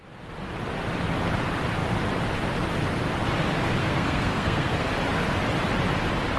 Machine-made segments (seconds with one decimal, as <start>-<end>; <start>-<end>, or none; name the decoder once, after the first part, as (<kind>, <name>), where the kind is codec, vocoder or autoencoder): 3.8-4.9 (codec, SNAC)